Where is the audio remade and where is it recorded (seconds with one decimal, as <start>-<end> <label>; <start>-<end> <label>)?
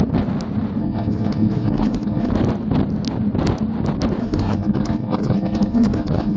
0.0-0.8 recorded; 0.8-2.3 remade; 2.3-4.2 recorded; 4.2-6.4 remade